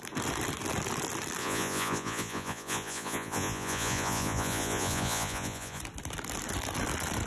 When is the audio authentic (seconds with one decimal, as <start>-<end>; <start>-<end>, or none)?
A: 0.0-1.4; 5.8-7.3